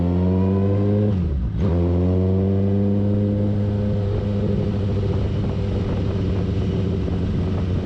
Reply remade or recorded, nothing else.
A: recorded